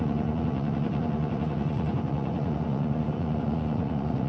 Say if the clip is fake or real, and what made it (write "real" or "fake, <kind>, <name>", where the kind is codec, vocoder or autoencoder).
fake, vocoder, Vocos